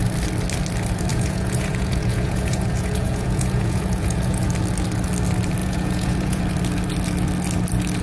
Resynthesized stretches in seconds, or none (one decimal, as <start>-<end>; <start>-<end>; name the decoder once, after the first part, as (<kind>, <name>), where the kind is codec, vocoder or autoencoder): 1.1-4.5 (vocoder, Vocos); 5.6-6.4